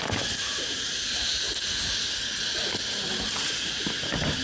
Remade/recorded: recorded